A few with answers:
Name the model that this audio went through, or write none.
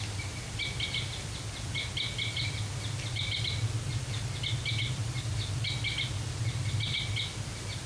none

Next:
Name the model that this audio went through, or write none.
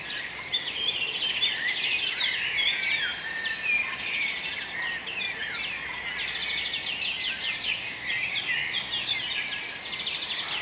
none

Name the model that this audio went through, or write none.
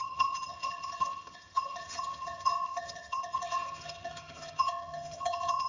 vocoder, HiFi-GAN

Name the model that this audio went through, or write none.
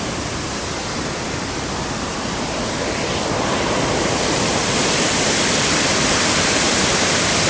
vocoder, BigVGAN v2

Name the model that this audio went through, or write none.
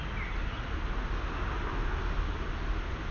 none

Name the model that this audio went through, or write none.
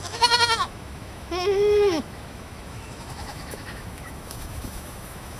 autoencoder, DAC-VAE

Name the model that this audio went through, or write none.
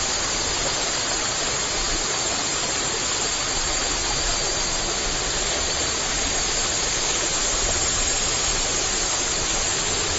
none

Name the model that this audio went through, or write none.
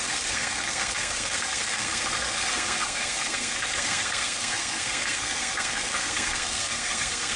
codec, SNAC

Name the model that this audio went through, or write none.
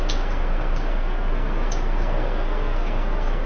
codec, SNAC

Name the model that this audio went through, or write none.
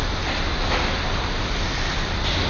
none